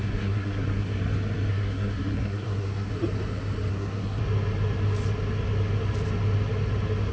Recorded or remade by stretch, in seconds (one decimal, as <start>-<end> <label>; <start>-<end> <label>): 0.0-1.0 remade; 1.0-1.5 recorded; 1.5-2.9 remade; 2.9-3.7 recorded; 3.7-4.2 remade; 4.2-7.1 recorded